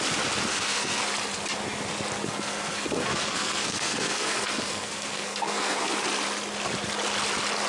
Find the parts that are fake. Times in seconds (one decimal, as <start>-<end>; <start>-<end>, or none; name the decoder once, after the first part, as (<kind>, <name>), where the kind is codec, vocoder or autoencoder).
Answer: 0.5-1.0 (codec, SNAC); 2.2-5.9